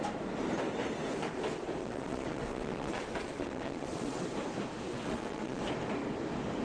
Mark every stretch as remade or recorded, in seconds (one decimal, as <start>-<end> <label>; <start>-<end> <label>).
0.0-1.8 recorded; 1.8-4.2 remade; 4.2-4.9 recorded; 4.9-5.6 remade; 5.6-6.6 recorded